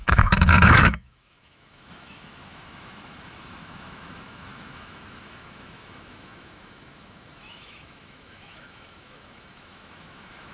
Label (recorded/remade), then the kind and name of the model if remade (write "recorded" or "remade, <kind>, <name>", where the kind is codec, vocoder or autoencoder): remade, autoencoder, DAC-VAE